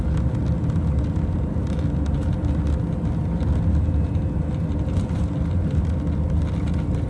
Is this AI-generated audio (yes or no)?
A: no